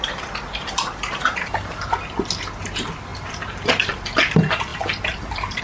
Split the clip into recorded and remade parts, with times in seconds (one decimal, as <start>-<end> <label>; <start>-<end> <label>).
0.0-5.6 recorded